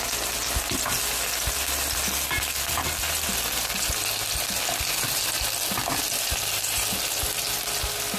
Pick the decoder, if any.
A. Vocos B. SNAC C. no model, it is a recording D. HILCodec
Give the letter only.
C